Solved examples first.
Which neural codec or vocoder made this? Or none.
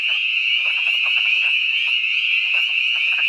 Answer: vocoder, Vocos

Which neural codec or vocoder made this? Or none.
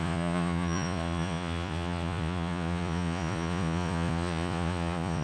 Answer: vocoder, Vocos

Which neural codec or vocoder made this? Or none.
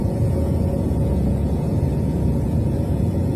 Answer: vocoder, Vocos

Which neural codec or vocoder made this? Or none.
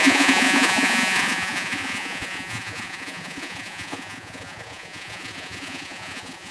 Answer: vocoder, Vocos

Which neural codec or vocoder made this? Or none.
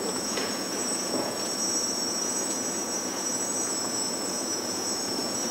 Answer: vocoder, Vocos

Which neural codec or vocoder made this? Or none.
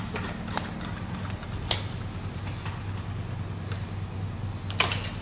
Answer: none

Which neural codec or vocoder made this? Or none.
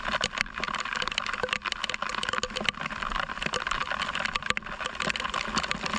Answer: none